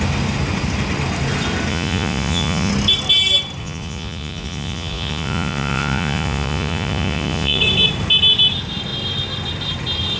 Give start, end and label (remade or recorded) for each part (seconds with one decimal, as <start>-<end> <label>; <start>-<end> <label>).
0.0-1.7 recorded; 1.7-2.7 remade; 2.7-3.6 recorded; 3.6-7.6 remade; 7.6-10.2 recorded